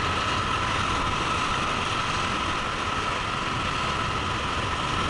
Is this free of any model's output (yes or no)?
yes